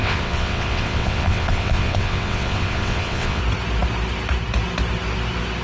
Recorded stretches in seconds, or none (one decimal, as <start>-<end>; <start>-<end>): 3.4-5.6